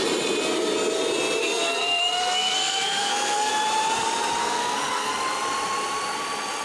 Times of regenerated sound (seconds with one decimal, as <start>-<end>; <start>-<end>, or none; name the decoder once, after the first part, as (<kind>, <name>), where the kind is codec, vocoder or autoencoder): 1.4-3.5 (codec, SNAC); 4.4-5.1